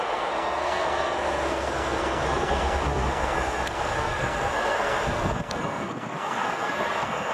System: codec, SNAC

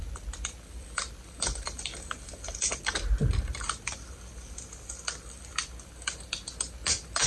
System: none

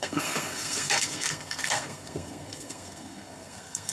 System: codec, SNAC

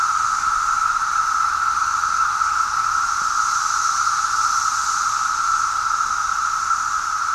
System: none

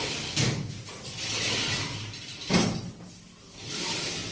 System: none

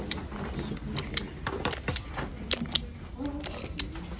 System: none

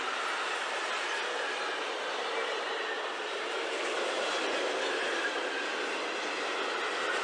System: none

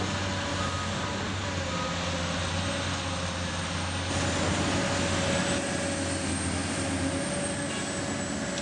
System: none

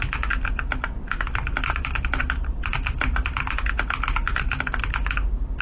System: none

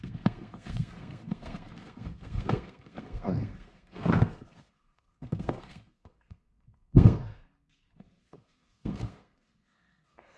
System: codec, SNAC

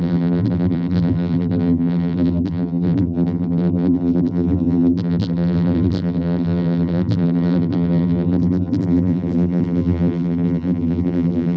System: vocoder, BigVGAN v2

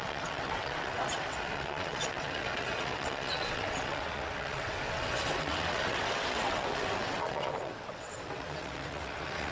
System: vocoder, WaveNeXt